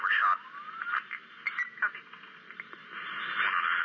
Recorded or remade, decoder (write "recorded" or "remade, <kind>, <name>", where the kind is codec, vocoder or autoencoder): recorded